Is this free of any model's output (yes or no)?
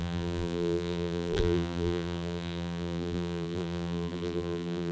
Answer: no